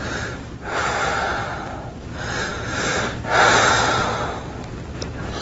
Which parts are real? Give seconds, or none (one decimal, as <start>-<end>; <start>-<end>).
0.0-0.8; 1.9-5.4